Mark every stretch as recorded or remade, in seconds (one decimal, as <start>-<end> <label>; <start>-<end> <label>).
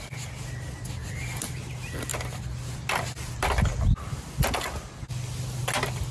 0.0-6.1 recorded